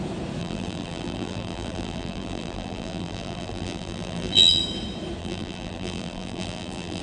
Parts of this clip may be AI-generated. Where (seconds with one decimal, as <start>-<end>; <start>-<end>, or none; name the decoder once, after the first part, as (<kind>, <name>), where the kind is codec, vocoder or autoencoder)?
0.4-4.6 (vocoder, BigVGAN v2); 5.2-7.0